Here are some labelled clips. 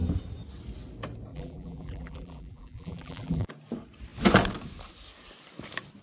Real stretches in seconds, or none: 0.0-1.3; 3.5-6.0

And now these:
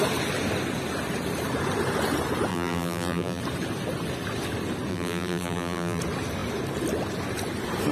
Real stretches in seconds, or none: 0.0-2.5; 3.4-4.9; 6.0-7.9

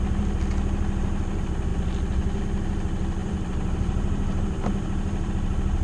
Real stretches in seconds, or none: 0.0-3.2; 5.3-5.8

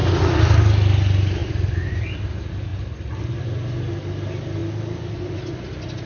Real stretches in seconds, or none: 0.6-1.4; 2.1-2.7; 3.4-6.1

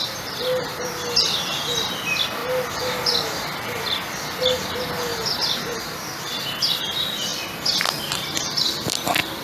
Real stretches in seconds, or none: 5.1-6.2